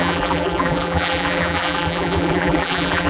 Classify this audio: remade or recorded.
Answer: remade